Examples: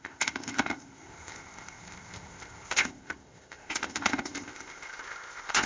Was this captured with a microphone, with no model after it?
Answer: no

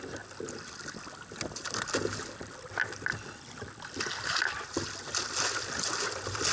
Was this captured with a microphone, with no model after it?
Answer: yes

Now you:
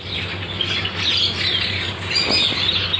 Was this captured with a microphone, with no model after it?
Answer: yes